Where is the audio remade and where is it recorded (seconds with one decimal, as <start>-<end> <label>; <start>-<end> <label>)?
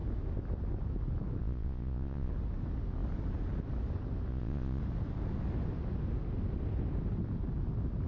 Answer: 0.0-1.4 recorded; 1.4-2.3 remade; 2.3-4.3 recorded; 4.3-4.8 remade; 4.8-8.1 recorded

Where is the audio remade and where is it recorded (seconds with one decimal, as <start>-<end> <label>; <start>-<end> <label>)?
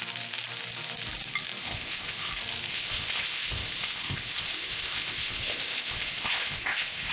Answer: 0.0-1.6 recorded; 1.6-2.3 remade; 2.3-2.7 recorded; 2.7-7.1 remade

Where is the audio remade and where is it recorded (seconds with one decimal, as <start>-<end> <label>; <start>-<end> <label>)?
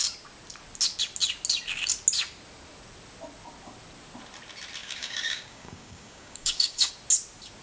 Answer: 0.0-4.8 recorded; 4.8-6.9 remade; 6.9-7.6 recorded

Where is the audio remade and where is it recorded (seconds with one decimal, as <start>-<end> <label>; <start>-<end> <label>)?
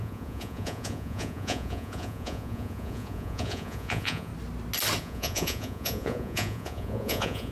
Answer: 0.0-4.3 remade; 4.3-5.0 recorded; 5.0-7.5 remade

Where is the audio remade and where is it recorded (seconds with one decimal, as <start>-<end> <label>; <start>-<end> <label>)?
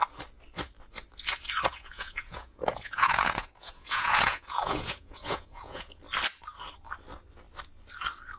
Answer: 0.0-1.7 recorded; 1.7-6.0 remade; 6.0-8.4 recorded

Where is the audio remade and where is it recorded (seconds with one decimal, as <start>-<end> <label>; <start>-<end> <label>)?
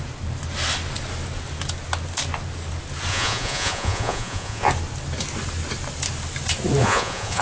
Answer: 0.0-3.1 recorded; 3.1-4.7 remade; 4.7-6.8 recorded; 6.8-7.4 remade